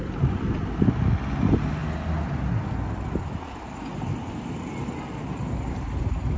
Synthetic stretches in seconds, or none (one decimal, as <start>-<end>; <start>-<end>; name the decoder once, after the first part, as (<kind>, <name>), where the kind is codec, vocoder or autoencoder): none